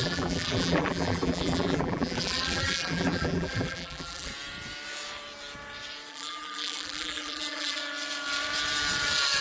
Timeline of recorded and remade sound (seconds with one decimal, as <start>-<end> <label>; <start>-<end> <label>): 0.0-4.3 remade; 4.3-6.1 recorded; 6.1-7.8 remade; 7.8-9.4 recorded